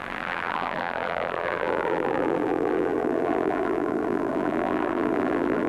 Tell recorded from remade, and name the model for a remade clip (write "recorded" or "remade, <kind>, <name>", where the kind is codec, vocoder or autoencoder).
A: remade, vocoder, BigVGAN v2